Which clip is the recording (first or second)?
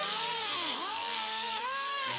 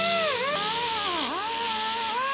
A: second